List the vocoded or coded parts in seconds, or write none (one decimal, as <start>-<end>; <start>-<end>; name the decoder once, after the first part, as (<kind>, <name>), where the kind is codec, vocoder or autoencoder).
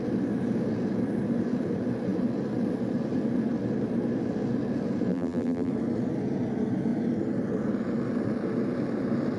5.1-5.7 (vocoder, BigVGAN v2)